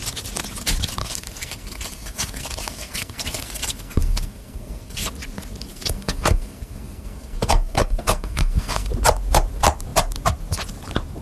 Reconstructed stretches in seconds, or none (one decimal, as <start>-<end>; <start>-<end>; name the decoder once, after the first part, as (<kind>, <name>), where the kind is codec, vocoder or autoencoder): 1.0-5.1 (codec, SNAC); 5.7-8.9